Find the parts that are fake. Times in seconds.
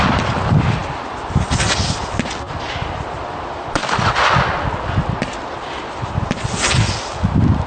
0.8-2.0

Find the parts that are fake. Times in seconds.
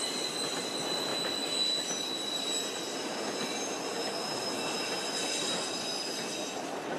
none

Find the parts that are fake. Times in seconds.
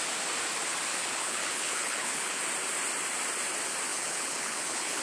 0.9-2.4; 3.9-5.0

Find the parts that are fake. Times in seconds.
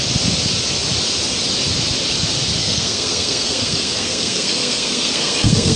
2.6-5.8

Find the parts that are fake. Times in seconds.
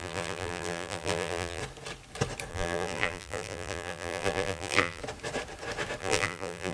0.0-1.6; 2.5-5.0; 6.0-6.7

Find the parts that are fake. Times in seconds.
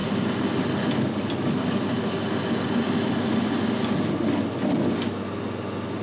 none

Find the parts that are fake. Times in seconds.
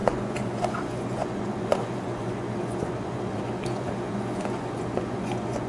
0.0-5.7